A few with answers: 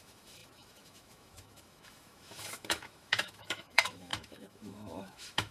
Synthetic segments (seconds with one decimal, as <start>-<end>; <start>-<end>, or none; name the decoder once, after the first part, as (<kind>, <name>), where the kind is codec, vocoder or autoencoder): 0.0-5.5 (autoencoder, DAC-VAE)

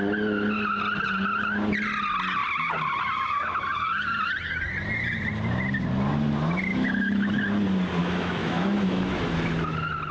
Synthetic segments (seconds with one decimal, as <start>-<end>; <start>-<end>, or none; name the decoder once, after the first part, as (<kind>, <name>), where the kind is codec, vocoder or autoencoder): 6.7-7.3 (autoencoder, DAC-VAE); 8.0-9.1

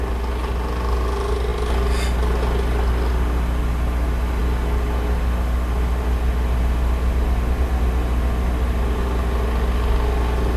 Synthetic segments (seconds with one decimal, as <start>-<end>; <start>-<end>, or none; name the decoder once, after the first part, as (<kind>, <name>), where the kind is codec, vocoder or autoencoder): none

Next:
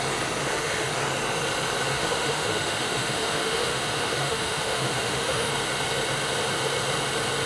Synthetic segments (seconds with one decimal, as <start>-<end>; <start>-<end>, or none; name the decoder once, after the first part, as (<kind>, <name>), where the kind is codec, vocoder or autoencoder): 0.4-0.9 (autoencoder, DAC-VAE); 1.9-5.5

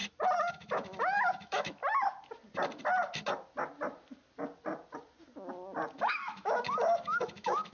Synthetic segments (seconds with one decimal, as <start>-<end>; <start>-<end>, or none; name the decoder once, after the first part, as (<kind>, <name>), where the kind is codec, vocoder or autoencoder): 0.5-1.8 (autoencoder, DAC-VAE); 6.0-7.7